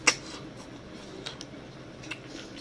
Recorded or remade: recorded